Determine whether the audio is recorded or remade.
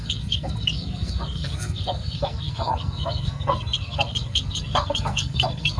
remade